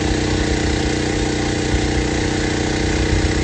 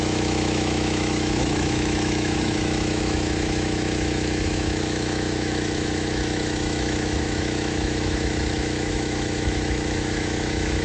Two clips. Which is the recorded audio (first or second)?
first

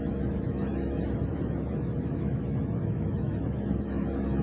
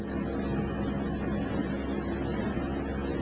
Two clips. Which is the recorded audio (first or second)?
second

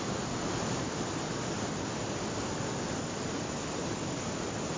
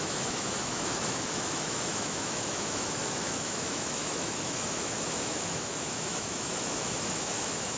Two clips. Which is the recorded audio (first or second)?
first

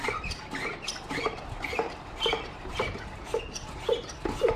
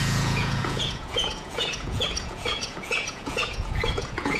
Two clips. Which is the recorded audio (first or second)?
first